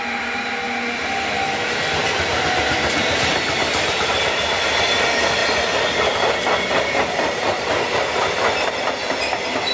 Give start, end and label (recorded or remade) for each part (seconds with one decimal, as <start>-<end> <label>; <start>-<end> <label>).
0.0-9.7 recorded